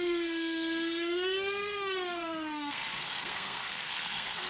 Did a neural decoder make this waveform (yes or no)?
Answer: yes